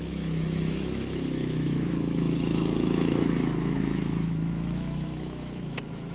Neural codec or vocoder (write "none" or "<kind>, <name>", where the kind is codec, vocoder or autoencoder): autoencoder, DAC-VAE